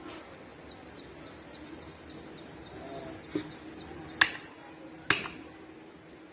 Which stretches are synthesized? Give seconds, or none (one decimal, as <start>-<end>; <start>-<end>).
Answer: 0.5-1.8